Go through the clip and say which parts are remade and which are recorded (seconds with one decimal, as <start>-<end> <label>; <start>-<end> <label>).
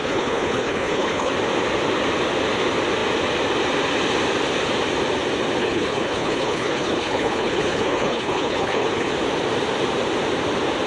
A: 0.0-1.3 remade; 1.3-5.6 recorded; 5.6-9.1 remade; 9.1-10.9 recorded